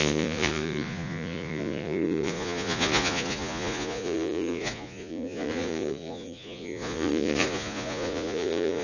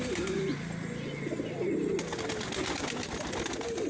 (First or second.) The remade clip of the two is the first